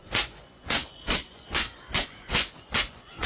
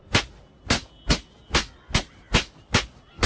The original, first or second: second